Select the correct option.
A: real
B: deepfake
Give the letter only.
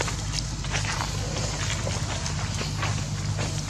A